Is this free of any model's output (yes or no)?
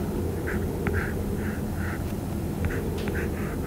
yes